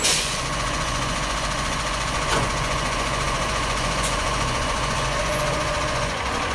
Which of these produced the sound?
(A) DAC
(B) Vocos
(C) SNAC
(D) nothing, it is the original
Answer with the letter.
B